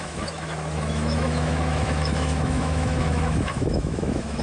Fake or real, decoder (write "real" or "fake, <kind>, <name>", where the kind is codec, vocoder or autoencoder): fake, autoencoder, DAC-VAE